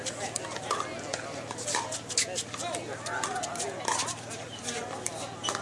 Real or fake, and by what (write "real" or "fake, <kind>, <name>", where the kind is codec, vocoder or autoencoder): real